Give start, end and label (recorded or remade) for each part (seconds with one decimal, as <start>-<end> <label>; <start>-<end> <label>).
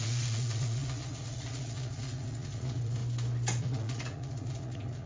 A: 0.0-3.0 remade; 3.0-3.6 recorded; 3.6-5.1 remade